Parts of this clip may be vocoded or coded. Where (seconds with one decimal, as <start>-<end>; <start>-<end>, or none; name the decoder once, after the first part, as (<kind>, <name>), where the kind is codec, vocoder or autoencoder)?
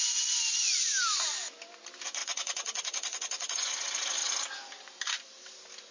2.2-3.7 (vocoder, Vocos)